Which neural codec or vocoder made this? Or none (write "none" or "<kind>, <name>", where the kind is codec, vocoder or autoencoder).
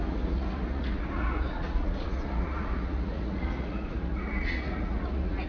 vocoder, Vocos